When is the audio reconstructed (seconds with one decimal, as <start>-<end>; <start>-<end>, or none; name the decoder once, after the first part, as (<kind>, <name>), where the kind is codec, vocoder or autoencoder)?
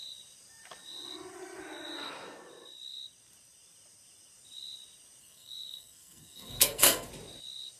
5.2-7.1 (codec, SNAC)